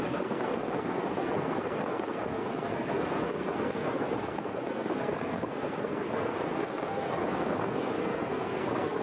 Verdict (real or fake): fake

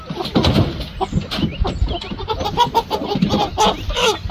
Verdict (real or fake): real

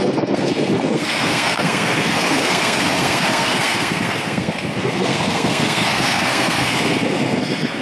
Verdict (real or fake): fake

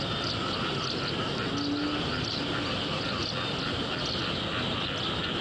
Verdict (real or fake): real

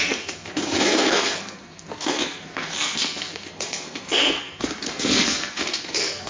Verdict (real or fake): fake